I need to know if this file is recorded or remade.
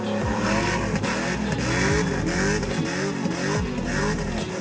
recorded